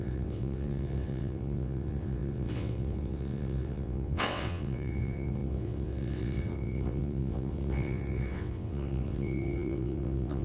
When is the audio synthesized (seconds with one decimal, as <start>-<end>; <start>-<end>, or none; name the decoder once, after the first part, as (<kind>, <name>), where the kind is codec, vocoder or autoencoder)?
0.0-10.4 (vocoder, WaveNeXt)